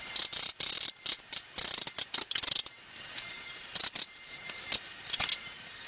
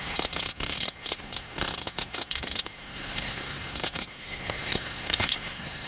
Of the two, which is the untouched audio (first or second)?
first